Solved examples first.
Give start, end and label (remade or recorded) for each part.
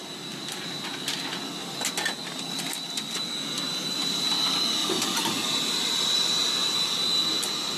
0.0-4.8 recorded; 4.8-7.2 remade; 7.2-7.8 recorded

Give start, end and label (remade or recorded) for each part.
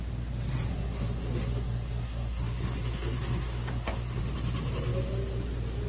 0.0-0.7 recorded; 0.7-4.2 remade; 4.2-5.9 recorded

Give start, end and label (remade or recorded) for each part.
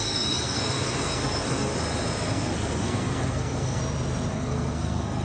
0.0-1.7 remade; 1.7-2.3 recorded; 2.3-3.8 remade; 3.8-4.3 recorded; 4.3-5.2 remade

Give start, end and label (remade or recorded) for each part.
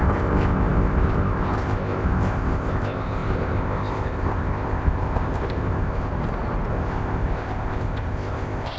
0.0-6.1 remade; 6.1-6.7 recorded; 6.7-8.8 remade